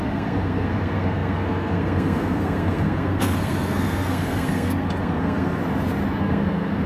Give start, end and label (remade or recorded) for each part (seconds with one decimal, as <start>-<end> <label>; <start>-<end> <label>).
0.0-5.6 remade; 5.6-6.2 recorded; 6.2-6.9 remade